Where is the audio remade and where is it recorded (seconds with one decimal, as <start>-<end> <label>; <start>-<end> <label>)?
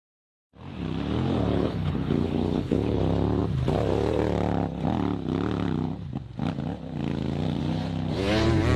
0.0-1.5 recorded; 1.5-3.0 remade; 3.0-8.8 recorded